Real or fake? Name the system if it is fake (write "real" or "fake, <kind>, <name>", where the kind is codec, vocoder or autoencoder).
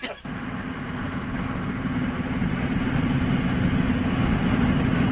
real